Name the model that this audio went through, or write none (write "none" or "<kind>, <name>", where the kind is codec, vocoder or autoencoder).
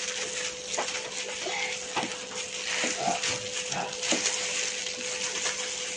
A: none